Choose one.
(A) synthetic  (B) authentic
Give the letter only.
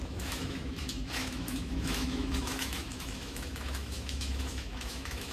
A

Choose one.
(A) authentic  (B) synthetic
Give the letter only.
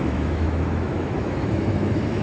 B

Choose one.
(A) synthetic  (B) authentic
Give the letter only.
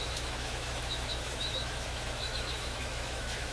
A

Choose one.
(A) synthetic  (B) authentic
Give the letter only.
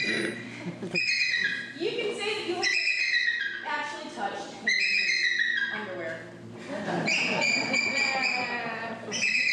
B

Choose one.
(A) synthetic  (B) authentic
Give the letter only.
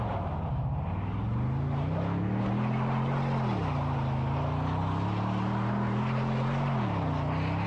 B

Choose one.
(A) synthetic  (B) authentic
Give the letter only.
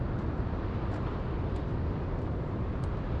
B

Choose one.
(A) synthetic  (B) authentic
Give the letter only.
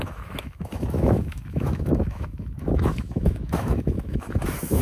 A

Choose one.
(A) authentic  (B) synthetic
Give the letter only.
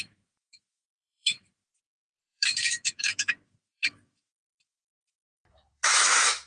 B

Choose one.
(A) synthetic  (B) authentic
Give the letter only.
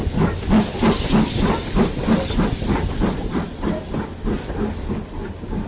B